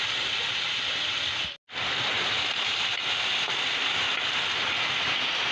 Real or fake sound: real